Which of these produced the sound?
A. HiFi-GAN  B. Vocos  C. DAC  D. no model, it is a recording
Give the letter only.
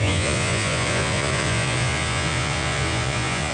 B